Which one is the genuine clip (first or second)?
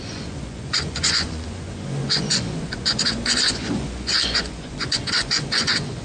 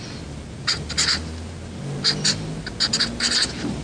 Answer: second